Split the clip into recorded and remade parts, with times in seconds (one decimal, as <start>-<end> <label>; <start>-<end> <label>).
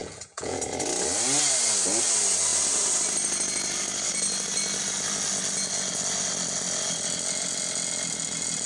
0.0-0.6 remade; 0.6-8.7 recorded